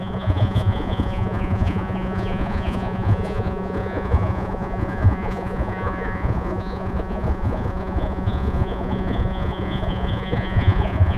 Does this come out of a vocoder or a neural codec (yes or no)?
yes